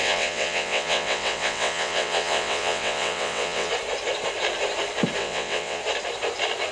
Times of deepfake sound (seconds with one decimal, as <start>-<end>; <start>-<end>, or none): 0.0-3.7; 5.2-5.8